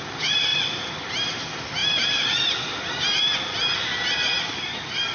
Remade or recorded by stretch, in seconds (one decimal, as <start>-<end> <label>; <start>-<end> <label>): 0.0-5.1 recorded